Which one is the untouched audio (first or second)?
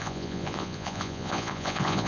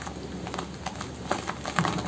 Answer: second